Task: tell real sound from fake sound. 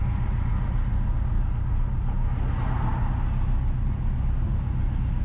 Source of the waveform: real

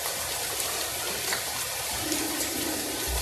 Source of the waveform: real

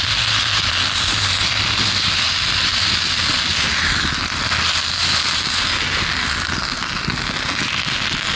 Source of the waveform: real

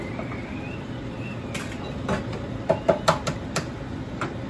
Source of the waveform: real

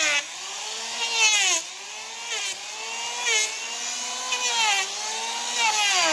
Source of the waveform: real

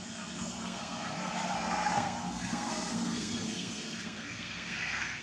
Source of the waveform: fake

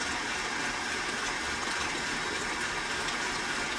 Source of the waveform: real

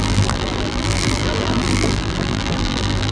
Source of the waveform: fake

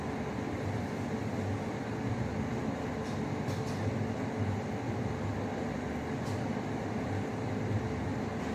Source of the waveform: fake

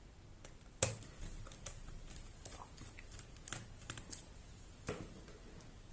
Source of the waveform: real